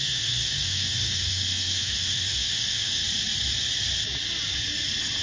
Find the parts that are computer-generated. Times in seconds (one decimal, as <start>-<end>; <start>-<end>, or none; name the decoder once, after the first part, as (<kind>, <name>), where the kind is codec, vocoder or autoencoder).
0.0-3.0 (autoencoder, DAC-VAE)